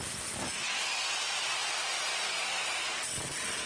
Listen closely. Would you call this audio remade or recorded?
recorded